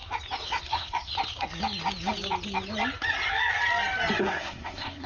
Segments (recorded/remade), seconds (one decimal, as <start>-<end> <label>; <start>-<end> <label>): 0.0-0.6 recorded; 0.6-1.1 remade; 1.1-4.2 recorded; 4.2-5.1 remade